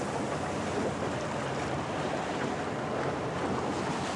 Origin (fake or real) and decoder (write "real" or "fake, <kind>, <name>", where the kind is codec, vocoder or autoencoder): real